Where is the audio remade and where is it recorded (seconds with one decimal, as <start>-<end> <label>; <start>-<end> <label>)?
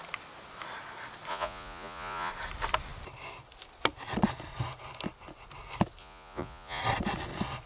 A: 0.0-1.3 recorded; 1.3-2.3 remade; 2.3-6.0 recorded; 6.0-6.8 remade; 6.8-7.7 recorded